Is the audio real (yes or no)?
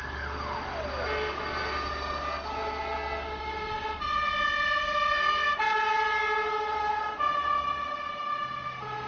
yes